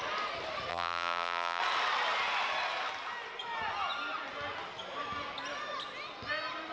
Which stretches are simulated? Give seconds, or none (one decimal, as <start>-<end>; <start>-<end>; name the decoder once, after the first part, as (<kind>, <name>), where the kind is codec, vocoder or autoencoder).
0.7-1.6 (vocoder, BigVGAN v2)